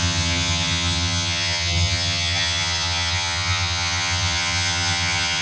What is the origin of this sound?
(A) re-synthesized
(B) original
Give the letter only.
A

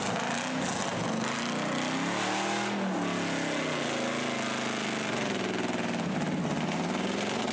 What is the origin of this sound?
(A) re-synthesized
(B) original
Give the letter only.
B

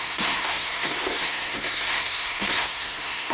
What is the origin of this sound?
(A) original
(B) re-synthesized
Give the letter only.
B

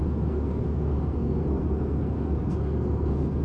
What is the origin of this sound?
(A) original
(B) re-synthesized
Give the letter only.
B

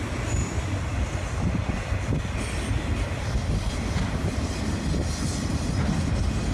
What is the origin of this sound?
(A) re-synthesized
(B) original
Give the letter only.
B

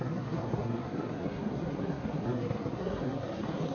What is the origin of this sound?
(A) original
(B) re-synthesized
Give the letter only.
B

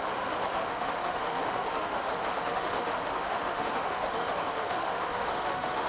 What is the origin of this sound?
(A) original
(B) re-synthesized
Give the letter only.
B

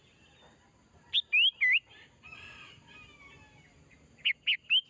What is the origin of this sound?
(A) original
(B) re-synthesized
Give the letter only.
A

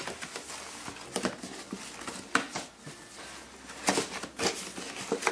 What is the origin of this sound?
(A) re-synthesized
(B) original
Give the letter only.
B